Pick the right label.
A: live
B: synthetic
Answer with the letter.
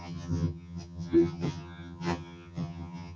B